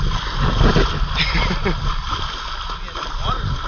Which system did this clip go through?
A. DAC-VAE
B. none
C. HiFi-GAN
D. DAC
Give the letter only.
B